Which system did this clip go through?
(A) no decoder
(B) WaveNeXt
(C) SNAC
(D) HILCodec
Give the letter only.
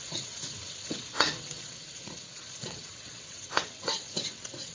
B